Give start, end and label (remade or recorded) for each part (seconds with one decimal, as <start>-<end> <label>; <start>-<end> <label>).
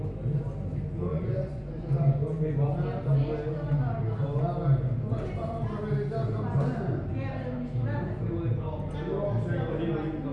0.0-1.1 recorded; 1.1-2.5 remade; 2.5-10.3 recorded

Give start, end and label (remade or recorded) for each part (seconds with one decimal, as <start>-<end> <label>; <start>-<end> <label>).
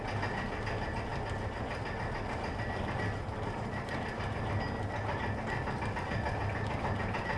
0.0-7.4 recorded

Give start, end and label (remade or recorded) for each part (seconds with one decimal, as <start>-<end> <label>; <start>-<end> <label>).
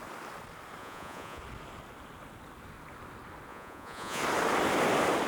0.0-0.8 recorded; 0.8-1.4 remade; 1.4-3.5 recorded; 3.5-4.2 remade; 4.2-5.3 recorded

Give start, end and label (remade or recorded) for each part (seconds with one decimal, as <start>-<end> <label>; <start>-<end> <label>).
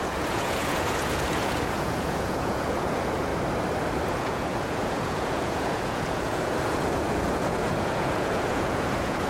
0.0-3.3 remade; 3.3-4.1 recorded; 4.1-9.3 remade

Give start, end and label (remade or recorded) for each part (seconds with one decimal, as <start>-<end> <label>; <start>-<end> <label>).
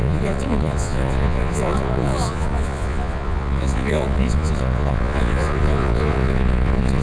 0.0-7.0 remade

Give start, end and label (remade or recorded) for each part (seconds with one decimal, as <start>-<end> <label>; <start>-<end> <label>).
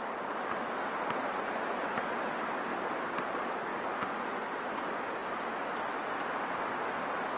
0.0-1.3 recorded; 1.3-1.9 remade; 1.9-3.7 recorded; 3.7-4.4 remade; 4.4-7.4 recorded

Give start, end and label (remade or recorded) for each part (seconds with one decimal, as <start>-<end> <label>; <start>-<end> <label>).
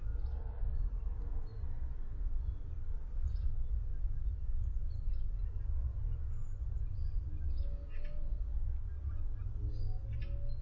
0.0-2.9 recorded; 2.9-3.5 remade; 3.5-10.6 recorded